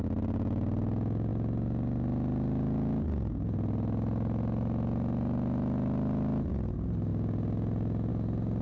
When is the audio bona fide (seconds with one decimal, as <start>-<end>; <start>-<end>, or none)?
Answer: 0.0-8.6